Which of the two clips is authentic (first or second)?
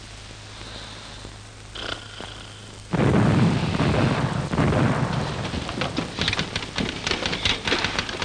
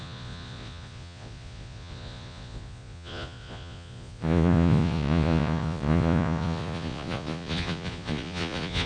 first